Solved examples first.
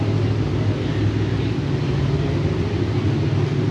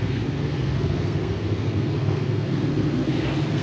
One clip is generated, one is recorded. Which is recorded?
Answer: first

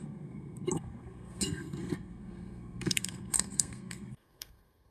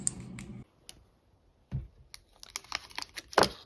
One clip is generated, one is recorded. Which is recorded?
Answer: second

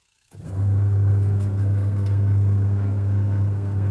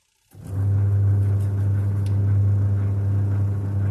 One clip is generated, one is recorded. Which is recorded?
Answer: second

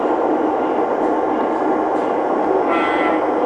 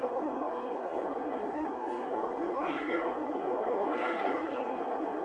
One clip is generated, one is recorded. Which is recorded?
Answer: first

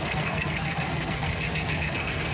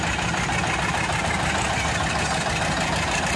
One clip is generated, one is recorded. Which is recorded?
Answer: second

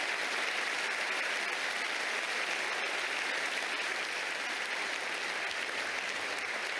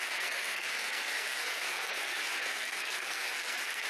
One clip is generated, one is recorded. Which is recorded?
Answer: first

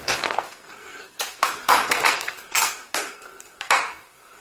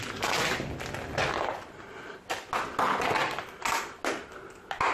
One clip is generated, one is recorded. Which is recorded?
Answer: second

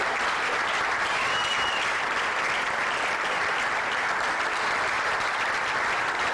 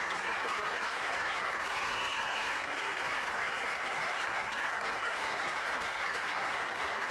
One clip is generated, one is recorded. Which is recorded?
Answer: first